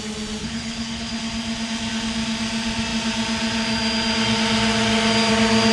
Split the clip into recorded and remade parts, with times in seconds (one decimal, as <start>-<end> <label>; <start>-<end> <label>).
0.0-0.4 recorded; 0.4-1.1 remade; 1.1-5.7 recorded